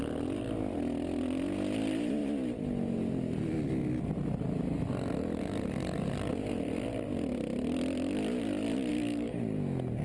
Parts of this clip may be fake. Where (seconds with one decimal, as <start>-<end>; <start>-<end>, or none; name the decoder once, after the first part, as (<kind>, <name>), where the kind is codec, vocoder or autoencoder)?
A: 8.9-9.4 (codec, DAC)